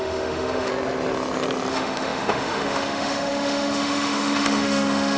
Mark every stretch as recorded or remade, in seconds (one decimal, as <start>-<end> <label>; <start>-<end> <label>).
0.0-0.7 remade; 0.7-1.7 recorded; 1.7-5.2 remade